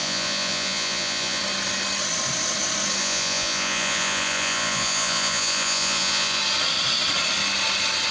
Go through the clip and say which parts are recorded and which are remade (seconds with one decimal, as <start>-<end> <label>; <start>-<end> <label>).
0.0-1.4 remade; 1.4-3.0 recorded; 3.0-6.4 remade; 6.4-8.1 recorded